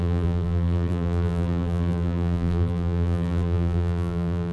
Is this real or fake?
fake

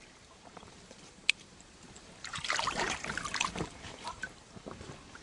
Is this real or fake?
fake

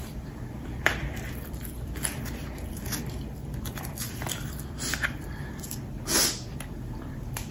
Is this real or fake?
fake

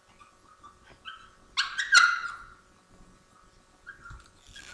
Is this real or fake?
real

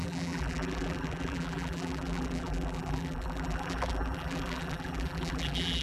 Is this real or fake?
fake